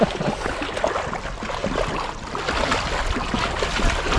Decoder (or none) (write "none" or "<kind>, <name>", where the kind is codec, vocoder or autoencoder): none